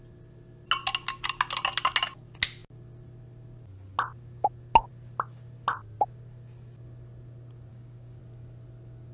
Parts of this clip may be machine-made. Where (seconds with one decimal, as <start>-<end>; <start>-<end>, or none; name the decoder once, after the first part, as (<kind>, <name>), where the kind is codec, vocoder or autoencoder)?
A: 7.7-8.2 (codec, DAC)